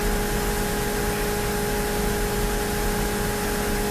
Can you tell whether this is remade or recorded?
recorded